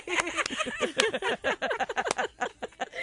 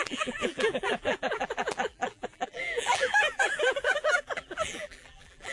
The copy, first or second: second